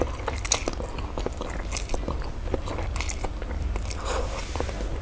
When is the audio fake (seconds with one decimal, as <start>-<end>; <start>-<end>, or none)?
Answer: none

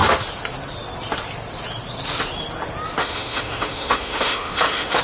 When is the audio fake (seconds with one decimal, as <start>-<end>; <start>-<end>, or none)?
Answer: 3.0-5.0

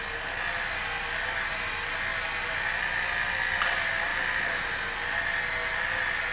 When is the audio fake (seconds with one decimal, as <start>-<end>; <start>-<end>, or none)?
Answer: none

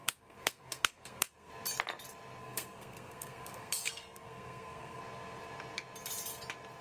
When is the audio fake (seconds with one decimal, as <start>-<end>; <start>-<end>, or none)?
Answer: 0.0-1.5; 2.4-5.0

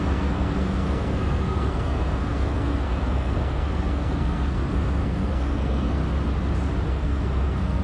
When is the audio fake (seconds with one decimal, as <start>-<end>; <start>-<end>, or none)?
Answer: 0.0-6.0; 6.9-7.8

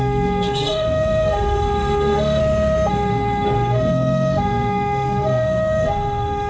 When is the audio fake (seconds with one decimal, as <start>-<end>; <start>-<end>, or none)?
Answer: 0.0-2.4; 2.9-6.5

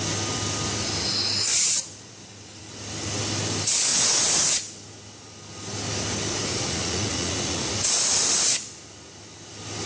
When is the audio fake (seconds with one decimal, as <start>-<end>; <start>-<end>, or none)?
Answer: 6.5-7.7